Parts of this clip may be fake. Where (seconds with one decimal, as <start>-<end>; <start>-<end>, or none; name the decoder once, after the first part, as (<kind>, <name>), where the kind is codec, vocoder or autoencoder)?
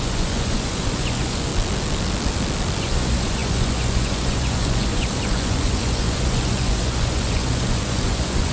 0.0-1.5 (vocoder, Vocos); 2.8-8.5